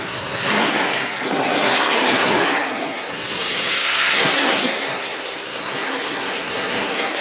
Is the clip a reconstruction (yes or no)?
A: yes